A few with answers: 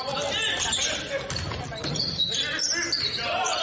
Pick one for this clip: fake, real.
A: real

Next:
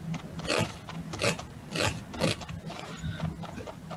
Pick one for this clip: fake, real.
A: real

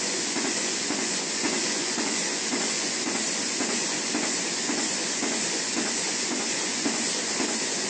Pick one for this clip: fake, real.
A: fake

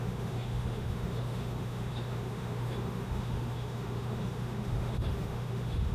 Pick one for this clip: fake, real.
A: fake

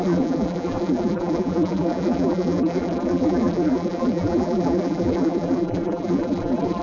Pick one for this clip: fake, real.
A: fake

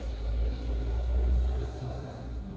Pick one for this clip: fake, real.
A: fake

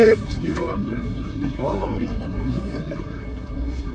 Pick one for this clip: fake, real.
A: fake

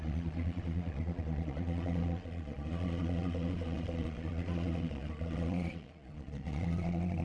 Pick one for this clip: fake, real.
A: fake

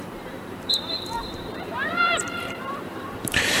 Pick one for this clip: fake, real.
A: fake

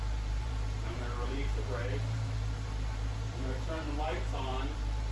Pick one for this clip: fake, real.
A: fake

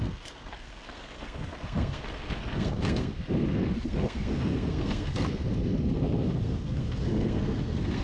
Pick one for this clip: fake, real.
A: fake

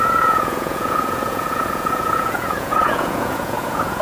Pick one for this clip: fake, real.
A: fake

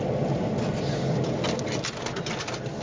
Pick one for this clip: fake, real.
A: real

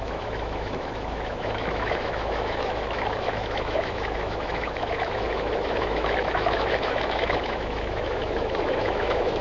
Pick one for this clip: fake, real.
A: fake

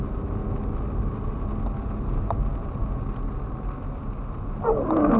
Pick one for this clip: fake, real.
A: real